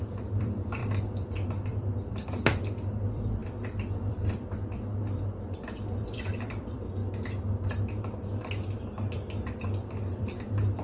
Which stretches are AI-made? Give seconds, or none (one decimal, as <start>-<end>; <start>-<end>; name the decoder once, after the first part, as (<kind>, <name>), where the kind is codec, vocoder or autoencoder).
0.0-3.4 (vocoder, BigVGAN v2); 4.1-4.9; 5.6-7.0; 8.9-10.8